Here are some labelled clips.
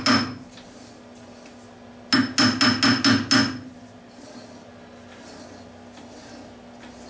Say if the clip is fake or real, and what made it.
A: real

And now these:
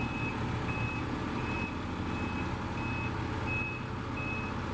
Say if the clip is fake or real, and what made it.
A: real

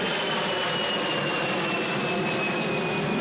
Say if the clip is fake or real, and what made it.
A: real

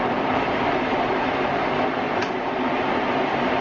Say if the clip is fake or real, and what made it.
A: fake, vocoder, BigVGAN v2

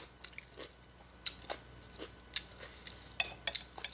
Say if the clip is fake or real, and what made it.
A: real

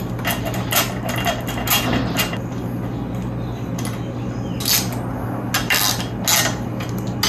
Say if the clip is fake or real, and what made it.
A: real